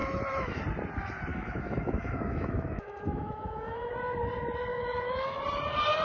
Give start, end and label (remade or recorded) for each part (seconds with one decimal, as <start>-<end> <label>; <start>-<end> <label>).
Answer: 0.0-0.6 remade; 0.6-1.3 recorded; 1.3-3.9 remade; 3.9-4.7 recorded; 4.7-5.4 remade; 5.4-6.0 recorded